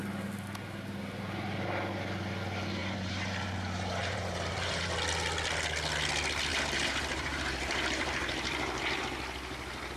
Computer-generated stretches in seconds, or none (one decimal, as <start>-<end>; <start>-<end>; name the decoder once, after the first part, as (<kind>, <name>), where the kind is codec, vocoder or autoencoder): 2.8-4.9 (vocoder, BigVGAN v2); 6.5-9.0